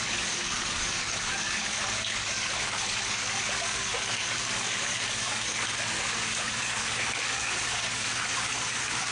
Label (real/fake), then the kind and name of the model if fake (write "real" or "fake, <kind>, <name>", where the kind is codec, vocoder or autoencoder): fake, codec, DAC